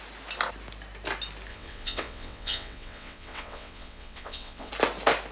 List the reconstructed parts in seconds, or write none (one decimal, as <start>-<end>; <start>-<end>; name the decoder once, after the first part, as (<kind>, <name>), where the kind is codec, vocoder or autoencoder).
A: 1.5-4.7 (vocoder, WaveNeXt)